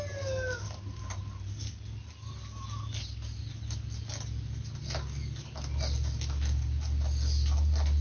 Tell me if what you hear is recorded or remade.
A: recorded